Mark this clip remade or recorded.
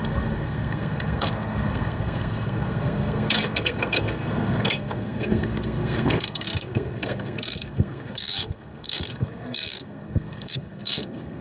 remade